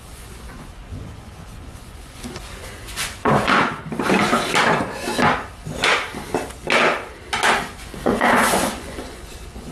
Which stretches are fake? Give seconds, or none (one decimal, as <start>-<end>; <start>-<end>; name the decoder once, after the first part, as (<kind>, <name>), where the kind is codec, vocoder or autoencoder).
0.0-3.6 (vocoder, Vocos); 4.6-5.1; 7.6-9.7